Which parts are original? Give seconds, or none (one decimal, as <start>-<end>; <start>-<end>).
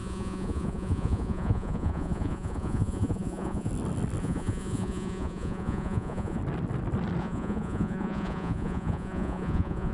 3.7-4.2; 6.4-7.2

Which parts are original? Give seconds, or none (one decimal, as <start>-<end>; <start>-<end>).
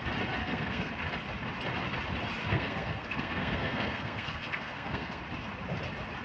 0.0-0.4; 0.9-2.4; 5.2-6.2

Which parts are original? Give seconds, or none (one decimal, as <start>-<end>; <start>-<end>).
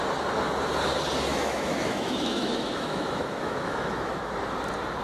0.0-1.3; 4.3-5.0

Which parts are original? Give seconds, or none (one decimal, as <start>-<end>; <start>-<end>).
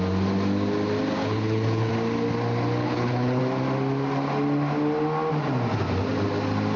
0.0-1.2; 1.9-2.8; 3.4-6.8